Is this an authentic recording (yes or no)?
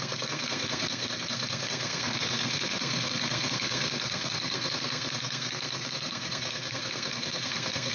no